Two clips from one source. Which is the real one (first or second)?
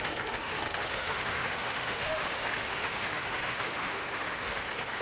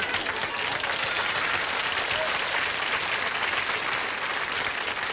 second